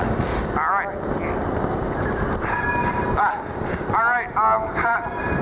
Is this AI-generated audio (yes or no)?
no